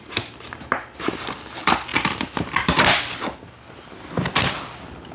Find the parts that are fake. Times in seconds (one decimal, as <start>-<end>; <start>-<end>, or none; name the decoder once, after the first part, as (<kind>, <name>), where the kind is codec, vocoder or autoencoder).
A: 1.9-5.1 (vocoder, BigVGAN v2)